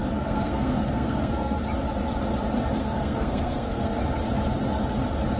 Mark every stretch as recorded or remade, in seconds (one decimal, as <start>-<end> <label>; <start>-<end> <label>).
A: 0.0-1.6 remade; 1.6-2.8 recorded; 2.8-4.0 remade; 4.0-5.4 recorded